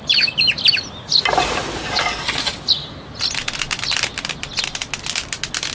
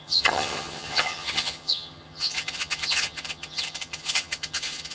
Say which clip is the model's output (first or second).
second